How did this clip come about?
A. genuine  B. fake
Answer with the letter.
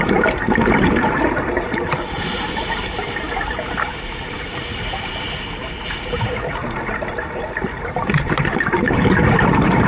B